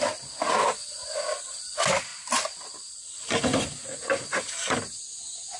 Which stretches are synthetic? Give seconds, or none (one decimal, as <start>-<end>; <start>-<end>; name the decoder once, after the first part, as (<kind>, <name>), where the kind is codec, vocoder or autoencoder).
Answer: none